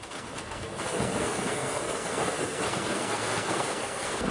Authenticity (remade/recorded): remade